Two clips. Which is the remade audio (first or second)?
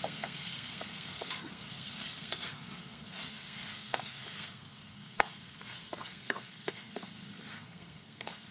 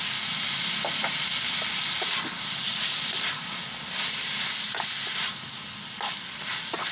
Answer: first